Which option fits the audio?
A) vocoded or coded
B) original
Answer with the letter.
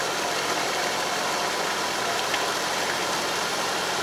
A